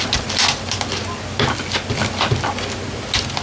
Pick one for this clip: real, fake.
real